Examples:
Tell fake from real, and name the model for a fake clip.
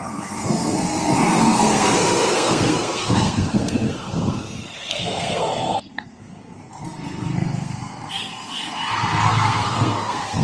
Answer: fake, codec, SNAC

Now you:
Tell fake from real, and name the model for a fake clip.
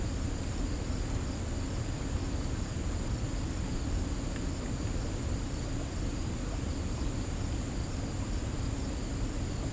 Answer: real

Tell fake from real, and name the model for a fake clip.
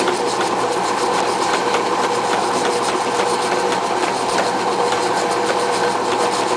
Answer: real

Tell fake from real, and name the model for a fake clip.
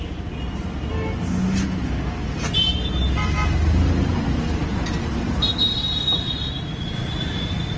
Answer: real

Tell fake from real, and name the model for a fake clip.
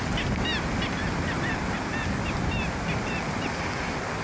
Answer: real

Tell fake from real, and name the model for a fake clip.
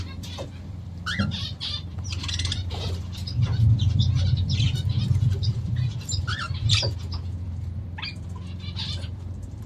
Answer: fake, vocoder, BigVGAN v2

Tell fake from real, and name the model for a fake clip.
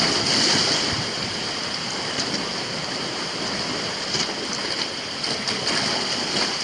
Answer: real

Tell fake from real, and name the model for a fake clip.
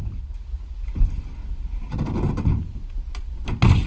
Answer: real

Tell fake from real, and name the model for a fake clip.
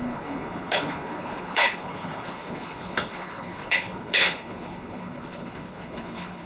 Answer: fake, codec, HILCodec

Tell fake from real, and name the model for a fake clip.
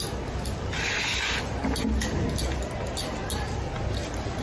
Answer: real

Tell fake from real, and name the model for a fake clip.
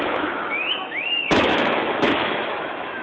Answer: fake, autoencoder, DAC-VAE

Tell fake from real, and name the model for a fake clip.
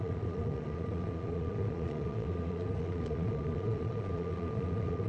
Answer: fake, vocoder, Vocos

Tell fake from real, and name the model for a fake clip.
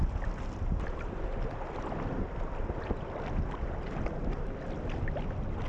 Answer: real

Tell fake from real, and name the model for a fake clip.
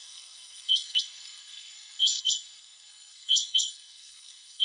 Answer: fake, codec, SNAC